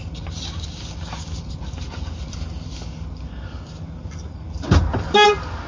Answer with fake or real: real